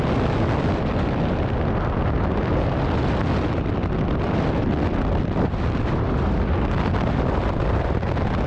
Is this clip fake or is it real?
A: real